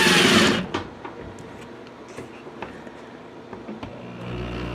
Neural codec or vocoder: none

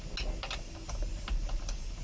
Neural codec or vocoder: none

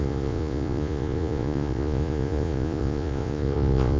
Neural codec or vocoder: vocoder, Vocos